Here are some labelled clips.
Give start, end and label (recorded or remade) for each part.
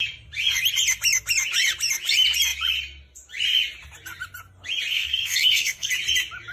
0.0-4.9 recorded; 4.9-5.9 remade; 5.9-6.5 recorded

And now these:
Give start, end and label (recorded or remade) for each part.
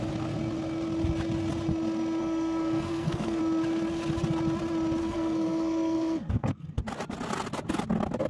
0.0-2.2 recorded; 2.2-3.4 remade; 3.4-5.0 recorded; 5.0-6.8 remade; 6.8-8.3 recorded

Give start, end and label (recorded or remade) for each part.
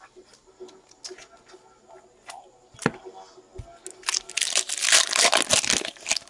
0.0-6.3 recorded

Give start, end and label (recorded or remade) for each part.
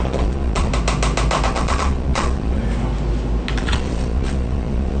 0.0-0.7 remade; 0.7-1.5 recorded; 1.5-2.6 remade; 2.6-3.6 recorded; 3.6-5.0 remade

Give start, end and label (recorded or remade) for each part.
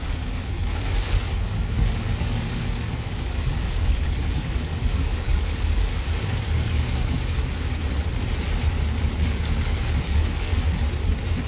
0.0-7.8 remade; 7.8-9.0 recorded; 9.0-10.5 remade; 10.5-11.5 recorded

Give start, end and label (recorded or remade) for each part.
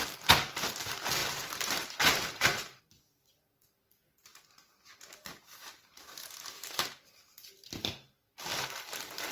0.0-1.2 recorded; 1.2-2.8 remade; 2.8-9.3 recorded